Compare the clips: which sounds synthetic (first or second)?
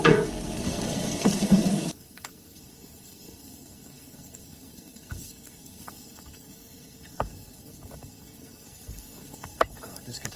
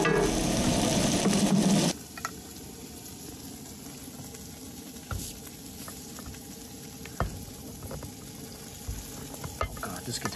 first